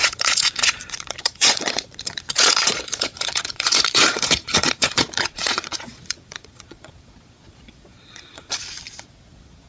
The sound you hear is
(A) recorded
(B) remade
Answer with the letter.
B